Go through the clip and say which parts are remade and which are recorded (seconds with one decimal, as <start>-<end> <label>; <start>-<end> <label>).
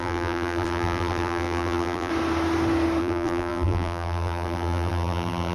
0.0-2.1 remade; 2.1-3.0 recorded; 3.0-5.5 remade